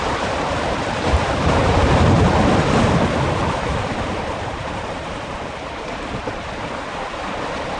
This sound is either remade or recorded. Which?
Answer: recorded